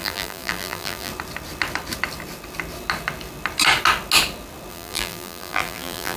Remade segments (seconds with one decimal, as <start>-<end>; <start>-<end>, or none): 0.0-1.1; 4.7-6.2